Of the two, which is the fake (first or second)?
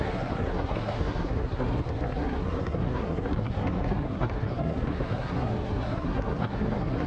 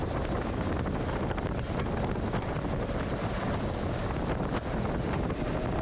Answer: first